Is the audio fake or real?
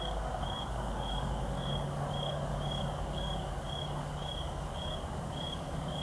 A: fake